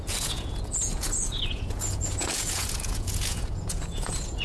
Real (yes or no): no